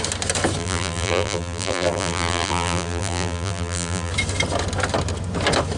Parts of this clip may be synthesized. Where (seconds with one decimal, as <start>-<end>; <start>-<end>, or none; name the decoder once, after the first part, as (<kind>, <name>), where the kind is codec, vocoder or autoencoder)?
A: 0.6-4.1 (vocoder, BigVGAN v2)